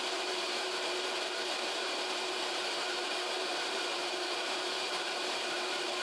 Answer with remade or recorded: remade